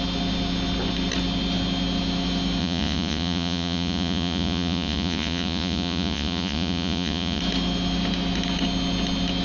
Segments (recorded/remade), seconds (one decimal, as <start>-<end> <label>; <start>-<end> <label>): 0.0-2.6 recorded; 2.6-7.4 remade; 7.4-9.4 recorded